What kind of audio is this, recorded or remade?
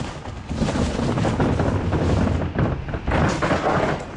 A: recorded